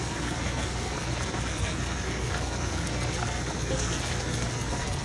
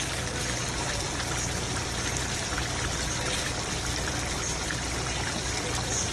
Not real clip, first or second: first